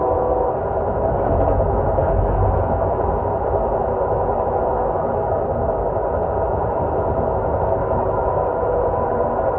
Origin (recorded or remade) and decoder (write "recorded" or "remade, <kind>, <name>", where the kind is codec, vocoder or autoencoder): recorded